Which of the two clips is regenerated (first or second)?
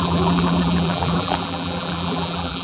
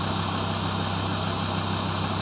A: first